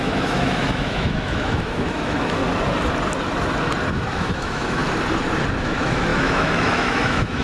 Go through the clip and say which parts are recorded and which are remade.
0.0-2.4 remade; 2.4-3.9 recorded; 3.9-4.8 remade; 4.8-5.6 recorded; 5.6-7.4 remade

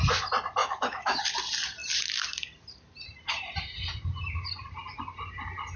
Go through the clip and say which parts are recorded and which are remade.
0.0-0.6 recorded; 0.6-1.2 remade; 1.2-5.8 recorded